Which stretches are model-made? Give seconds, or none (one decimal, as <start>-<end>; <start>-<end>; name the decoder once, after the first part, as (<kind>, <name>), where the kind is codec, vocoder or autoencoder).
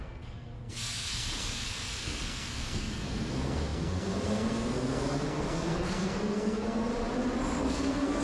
0.0-6.9 (codec, SNAC); 7.6-8.2